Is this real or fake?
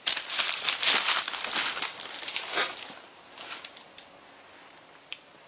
real